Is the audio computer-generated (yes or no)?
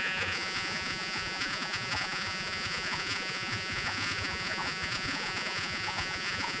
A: yes